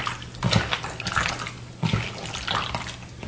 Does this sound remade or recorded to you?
recorded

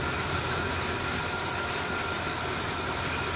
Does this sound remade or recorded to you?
recorded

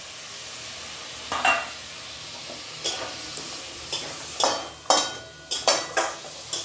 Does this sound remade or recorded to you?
recorded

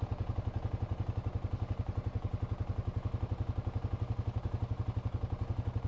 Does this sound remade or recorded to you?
recorded